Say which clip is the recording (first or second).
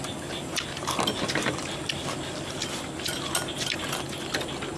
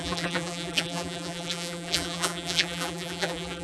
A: first